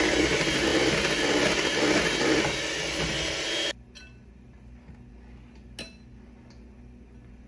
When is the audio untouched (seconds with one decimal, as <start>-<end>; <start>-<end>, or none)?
0.0-7.5